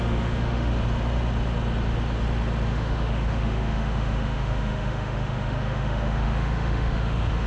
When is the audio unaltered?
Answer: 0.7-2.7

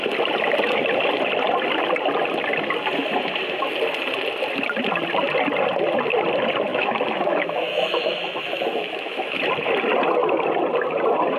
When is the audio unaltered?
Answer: 0.0-6.7; 9.4-11.4

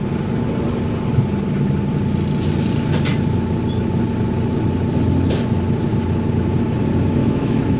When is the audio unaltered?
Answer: 0.0-7.2

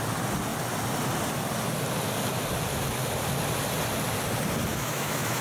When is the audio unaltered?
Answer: 0.0-4.7

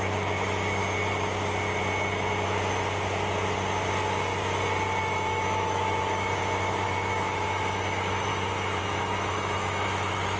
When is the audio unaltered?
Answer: 0.8-5.0; 8.3-8.8